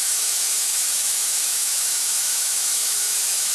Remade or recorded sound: remade